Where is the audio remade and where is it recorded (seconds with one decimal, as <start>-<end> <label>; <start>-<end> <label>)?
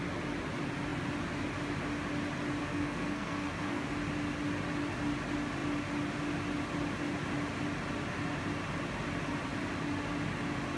0.0-2.6 recorded; 2.6-3.9 remade; 3.9-10.8 recorded